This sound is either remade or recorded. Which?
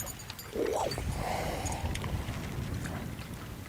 recorded